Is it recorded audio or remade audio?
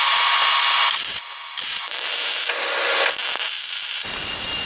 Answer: recorded